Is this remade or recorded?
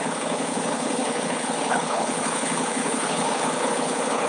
remade